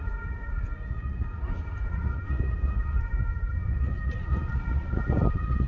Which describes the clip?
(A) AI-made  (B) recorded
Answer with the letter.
A